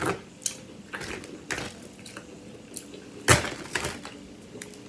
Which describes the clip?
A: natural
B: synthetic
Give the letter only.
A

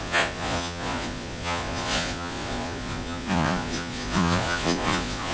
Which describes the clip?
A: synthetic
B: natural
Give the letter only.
A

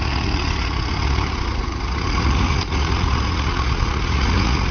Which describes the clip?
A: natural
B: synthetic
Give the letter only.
B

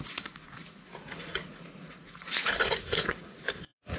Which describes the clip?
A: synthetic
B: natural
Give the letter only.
A